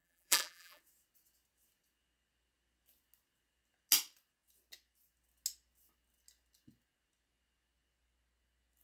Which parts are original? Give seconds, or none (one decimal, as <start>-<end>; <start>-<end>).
0.8-8.8